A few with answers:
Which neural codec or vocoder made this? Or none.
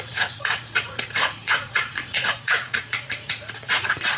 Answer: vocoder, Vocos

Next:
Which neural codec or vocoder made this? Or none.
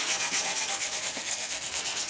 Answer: codec, SNAC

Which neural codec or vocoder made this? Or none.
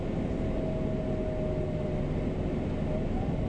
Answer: none